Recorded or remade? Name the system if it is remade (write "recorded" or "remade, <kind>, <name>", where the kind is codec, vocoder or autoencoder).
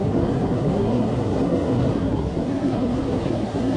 remade, codec, SNAC